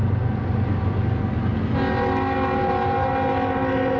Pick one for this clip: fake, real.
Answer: real